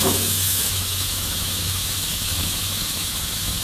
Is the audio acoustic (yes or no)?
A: no